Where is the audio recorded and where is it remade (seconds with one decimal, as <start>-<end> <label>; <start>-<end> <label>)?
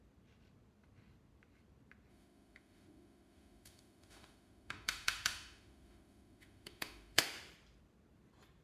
0.0-2.1 recorded; 2.1-7.2 remade; 7.2-8.6 recorded